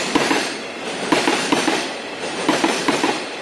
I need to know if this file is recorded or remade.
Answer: remade